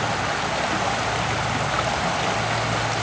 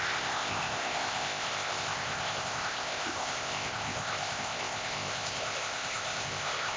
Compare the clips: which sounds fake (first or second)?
second